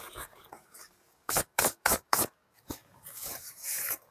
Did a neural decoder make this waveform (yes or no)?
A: yes